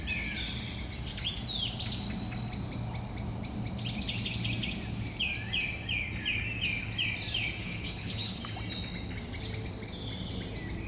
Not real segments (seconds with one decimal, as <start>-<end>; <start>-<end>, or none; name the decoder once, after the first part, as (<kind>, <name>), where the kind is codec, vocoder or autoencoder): 7.6-8.4 (codec, HILCodec)